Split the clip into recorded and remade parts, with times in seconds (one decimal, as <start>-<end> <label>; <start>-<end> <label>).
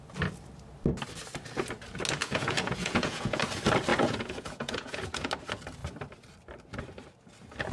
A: 0.0-2.2 recorded; 2.2-3.4 remade; 3.4-3.9 recorded; 3.9-5.3 remade; 5.3-7.7 recorded